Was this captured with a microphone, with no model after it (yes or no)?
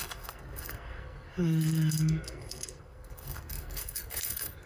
no